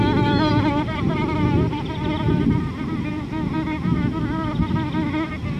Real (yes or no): yes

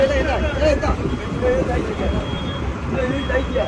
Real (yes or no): yes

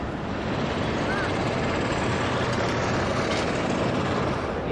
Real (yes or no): yes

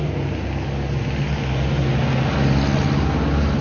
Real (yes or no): yes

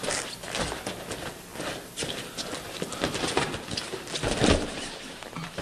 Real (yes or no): yes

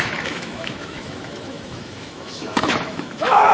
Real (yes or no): no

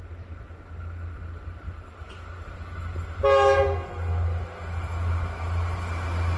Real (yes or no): yes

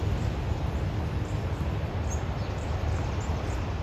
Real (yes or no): yes